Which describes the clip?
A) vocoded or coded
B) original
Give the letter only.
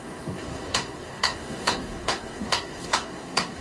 A